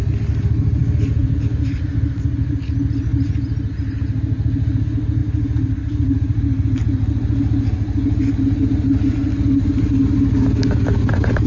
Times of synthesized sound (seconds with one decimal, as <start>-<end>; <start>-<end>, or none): none